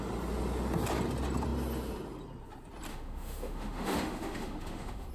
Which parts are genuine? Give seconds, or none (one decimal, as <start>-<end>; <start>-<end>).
0.0-2.9